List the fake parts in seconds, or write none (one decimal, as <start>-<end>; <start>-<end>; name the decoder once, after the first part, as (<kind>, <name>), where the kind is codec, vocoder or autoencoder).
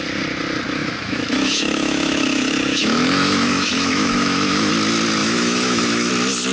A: 0.8-4.7 (autoencoder, DAC-VAE); 5.2-6.1